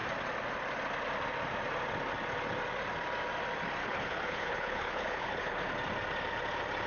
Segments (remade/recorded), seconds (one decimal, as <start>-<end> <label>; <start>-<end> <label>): 0.0-3.8 recorded; 3.8-5.7 remade; 5.7-6.9 recorded